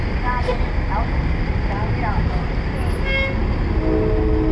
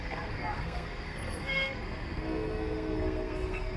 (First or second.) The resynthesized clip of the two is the second